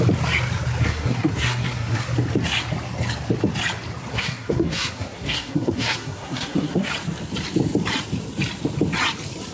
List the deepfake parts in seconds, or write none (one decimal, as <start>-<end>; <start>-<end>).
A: 0.8-2.0; 4.1-6.9